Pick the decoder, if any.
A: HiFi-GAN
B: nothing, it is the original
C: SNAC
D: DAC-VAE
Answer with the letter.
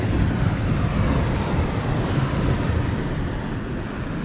B